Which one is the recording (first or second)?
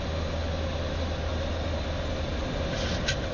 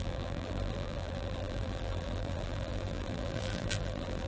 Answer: first